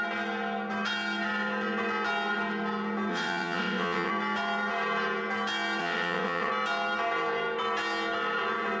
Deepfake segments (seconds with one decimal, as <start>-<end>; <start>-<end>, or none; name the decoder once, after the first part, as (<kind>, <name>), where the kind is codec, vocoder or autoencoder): 3.1-4.1 (vocoder, WaveNeXt); 5.8-6.5

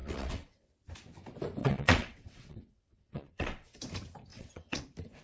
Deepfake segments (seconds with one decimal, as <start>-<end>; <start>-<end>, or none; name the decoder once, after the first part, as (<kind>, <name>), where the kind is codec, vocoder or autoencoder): 0.0-0.7 (vocoder, WaveNeXt); 1.6-3.8; 4.3-4.8